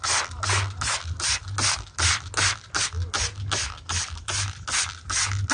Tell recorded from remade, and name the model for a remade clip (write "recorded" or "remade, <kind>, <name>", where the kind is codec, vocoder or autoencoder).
recorded